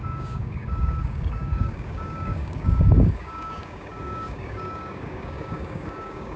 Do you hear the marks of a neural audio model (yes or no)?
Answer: yes